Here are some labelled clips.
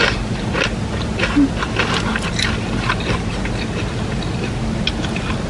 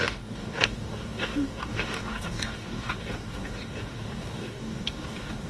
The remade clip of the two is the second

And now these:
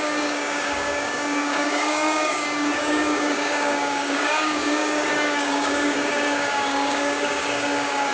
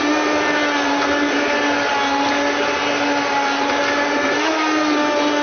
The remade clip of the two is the first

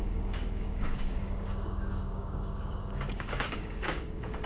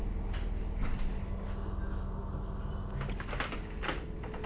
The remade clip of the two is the first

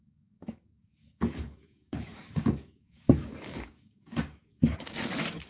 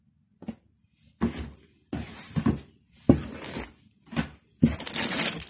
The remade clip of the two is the first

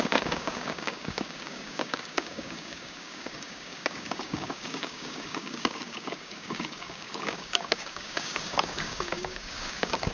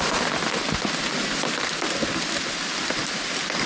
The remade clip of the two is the first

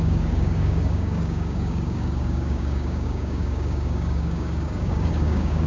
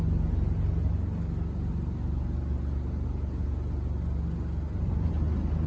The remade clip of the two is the first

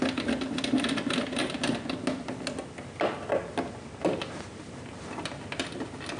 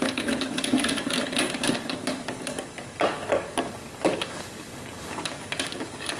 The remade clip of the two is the second